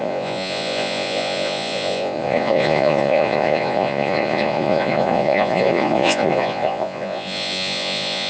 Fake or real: fake